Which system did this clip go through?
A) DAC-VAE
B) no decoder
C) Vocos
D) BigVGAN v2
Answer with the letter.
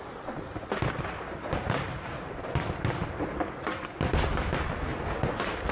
B